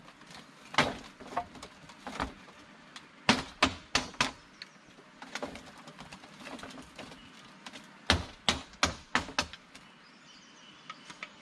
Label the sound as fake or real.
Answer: real